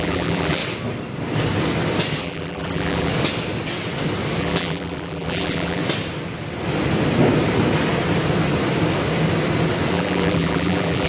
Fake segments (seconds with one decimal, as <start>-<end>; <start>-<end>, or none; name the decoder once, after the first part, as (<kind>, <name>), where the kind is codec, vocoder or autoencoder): 0.0-0.6 (vocoder, BigVGAN v2); 2.2-3.1; 4.4-5.8; 9.9-11.1